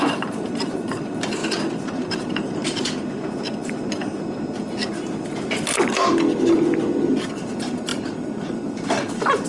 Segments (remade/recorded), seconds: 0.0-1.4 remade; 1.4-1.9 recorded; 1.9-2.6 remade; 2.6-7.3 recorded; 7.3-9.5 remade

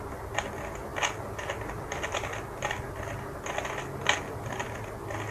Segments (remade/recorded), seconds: 0.0-5.3 recorded

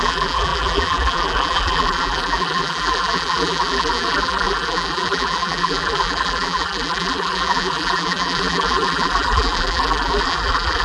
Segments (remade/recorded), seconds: 0.0-10.8 remade

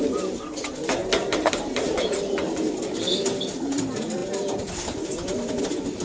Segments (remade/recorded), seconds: 0.0-6.0 recorded

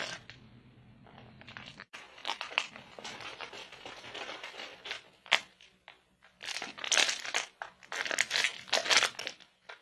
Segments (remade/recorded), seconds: 0.0-1.7 recorded; 1.7-3.5 remade; 3.5-9.8 recorded

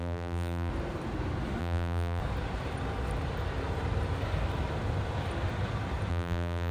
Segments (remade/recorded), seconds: 0.0-0.7 remade; 0.7-1.6 recorded; 1.6-2.2 remade; 2.2-6.1 recorded; 6.1-6.7 remade

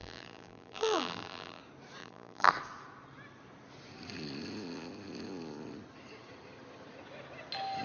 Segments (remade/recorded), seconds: 0.0-1.6 remade; 1.6-2.0 recorded; 2.0-2.5 remade; 2.5-7.8 recorded

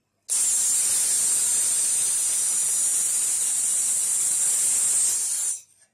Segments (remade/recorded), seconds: 0.0-2.9 recorded; 2.9-4.4 remade; 4.4-5.9 recorded